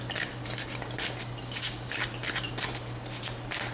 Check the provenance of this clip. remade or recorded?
recorded